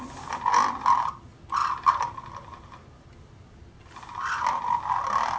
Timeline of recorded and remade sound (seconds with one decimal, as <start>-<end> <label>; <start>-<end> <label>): 0.0-5.4 recorded